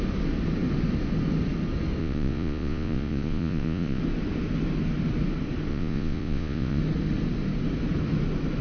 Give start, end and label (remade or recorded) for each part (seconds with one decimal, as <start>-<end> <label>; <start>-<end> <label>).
0.0-2.0 recorded; 2.0-4.0 remade; 4.0-5.7 recorded; 5.7-6.8 remade; 6.8-8.6 recorded